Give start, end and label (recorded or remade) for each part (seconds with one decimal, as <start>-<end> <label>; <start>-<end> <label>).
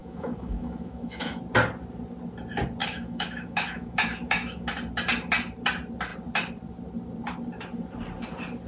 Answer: 0.0-1.4 remade; 1.4-2.8 recorded; 2.8-4.7 remade; 4.7-8.7 recorded